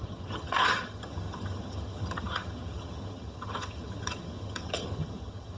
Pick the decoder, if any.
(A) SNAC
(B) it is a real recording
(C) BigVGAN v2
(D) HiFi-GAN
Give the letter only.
D